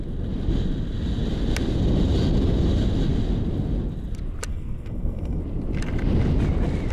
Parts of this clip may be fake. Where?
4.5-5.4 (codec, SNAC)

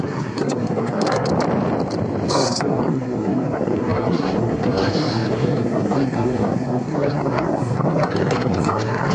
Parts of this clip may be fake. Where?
0.0-1.3 (codec, SNAC); 2.3-9.1